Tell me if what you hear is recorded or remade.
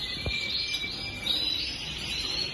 recorded